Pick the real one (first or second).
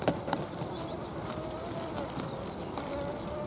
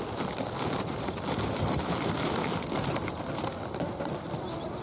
second